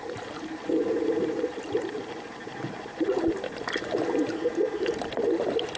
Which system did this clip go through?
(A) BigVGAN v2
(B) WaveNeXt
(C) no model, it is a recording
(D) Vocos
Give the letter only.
C